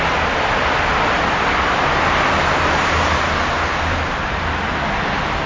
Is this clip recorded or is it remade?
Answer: recorded